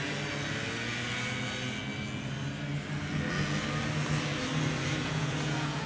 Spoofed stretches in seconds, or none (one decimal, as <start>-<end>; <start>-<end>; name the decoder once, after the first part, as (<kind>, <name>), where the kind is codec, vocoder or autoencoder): 4.9-5.9 (vocoder, Vocos)